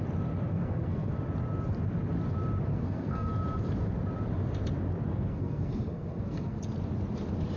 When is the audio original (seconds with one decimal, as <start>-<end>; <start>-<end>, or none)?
0.0-0.5; 1.1-2.7; 3.3-5.1; 6.6-7.6